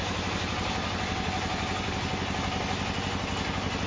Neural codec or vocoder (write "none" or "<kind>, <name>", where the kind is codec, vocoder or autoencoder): none